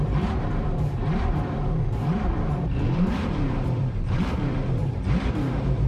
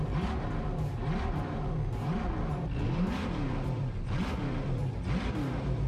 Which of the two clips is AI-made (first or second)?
first